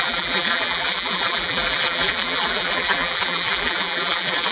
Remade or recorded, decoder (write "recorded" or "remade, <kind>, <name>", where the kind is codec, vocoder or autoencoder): remade, vocoder, BigVGAN v2